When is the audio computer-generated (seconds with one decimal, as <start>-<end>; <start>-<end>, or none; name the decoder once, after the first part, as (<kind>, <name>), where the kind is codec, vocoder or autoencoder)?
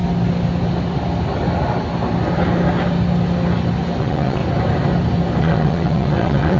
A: 4.0-4.4 (vocoder, WaveNeXt); 5.4-6.6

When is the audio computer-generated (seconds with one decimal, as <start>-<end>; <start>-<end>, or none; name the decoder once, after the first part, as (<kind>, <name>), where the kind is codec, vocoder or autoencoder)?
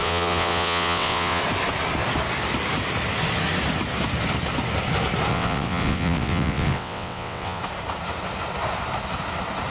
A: 0.0-1.4 (vocoder, WaveNeXt); 5.3-7.6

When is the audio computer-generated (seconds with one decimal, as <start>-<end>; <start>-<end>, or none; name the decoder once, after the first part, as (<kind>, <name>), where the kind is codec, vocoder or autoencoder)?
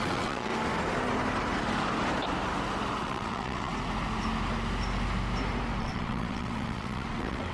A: 0.0-0.5 (vocoder, WaveNeXt); 3.0-3.7; 5.8-7.5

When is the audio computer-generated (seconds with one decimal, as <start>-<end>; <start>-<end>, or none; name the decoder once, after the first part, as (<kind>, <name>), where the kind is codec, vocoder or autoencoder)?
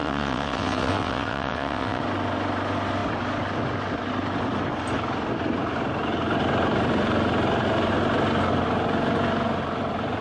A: 0.0-2.0 (vocoder, WaveNeXt)